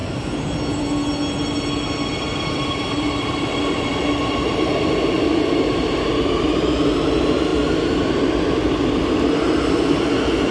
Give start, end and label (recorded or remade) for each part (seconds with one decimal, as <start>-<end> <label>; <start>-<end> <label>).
0.0-10.5 recorded